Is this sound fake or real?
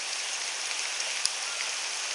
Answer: real